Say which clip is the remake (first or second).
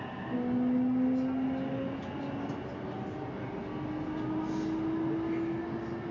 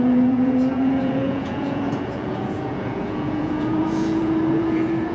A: second